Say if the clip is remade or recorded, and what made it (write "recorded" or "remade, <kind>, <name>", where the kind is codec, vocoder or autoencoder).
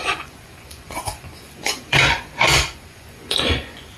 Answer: remade, vocoder, Vocos